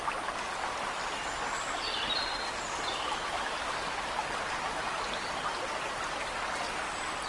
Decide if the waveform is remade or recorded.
recorded